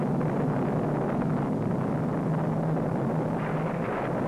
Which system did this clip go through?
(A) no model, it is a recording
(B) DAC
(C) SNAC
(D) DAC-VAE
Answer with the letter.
A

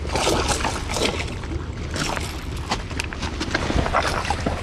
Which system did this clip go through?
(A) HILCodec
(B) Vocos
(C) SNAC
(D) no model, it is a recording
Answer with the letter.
D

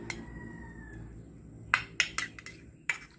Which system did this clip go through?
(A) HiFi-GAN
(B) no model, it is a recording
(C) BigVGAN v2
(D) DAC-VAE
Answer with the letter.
B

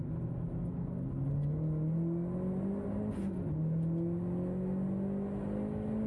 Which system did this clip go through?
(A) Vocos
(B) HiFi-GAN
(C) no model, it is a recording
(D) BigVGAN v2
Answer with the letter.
C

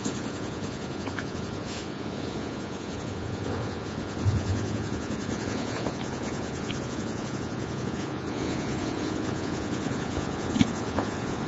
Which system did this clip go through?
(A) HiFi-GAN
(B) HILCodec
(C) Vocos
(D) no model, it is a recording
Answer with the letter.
C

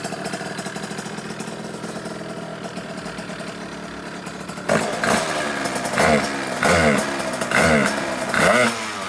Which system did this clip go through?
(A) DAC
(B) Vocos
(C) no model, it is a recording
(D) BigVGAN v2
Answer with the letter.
C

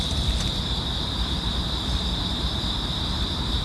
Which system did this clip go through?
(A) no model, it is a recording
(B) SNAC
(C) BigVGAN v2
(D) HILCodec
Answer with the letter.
C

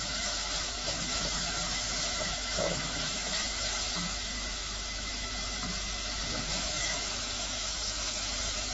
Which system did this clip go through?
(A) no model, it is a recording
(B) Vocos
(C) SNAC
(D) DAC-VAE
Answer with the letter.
D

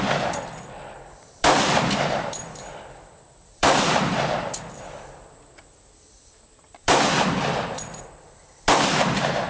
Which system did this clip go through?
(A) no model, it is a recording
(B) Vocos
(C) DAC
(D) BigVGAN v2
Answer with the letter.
D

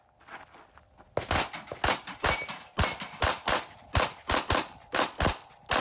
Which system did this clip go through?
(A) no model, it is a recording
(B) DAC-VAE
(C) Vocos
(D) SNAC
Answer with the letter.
A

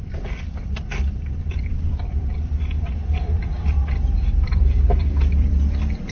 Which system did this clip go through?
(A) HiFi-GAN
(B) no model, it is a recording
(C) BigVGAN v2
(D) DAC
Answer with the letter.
C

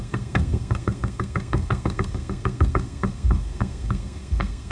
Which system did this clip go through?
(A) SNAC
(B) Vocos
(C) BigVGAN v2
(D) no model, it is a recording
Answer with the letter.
A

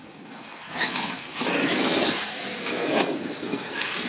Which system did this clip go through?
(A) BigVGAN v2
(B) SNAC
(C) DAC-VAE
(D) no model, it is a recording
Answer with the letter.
B